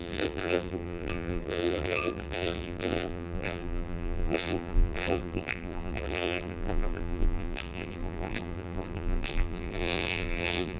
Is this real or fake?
fake